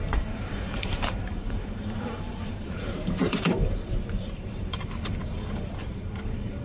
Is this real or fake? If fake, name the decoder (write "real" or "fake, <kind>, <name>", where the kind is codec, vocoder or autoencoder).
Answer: fake, vocoder, BigVGAN v2